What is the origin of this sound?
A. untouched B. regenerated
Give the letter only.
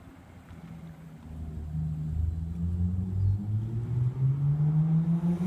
A